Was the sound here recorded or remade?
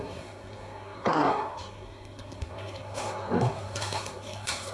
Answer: remade